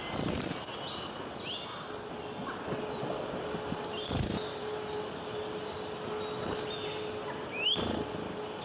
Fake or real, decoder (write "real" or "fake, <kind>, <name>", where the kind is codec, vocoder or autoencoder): real